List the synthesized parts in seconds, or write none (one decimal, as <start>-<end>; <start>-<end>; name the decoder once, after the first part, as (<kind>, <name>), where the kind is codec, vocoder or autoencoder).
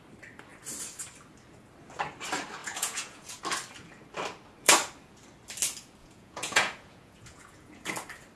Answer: 2.6-3.4 (vocoder, Vocos); 6.0-7.9